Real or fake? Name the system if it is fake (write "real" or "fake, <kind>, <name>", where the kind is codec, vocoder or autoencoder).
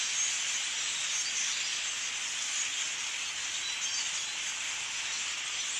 real